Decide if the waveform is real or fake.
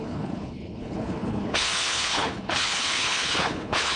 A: fake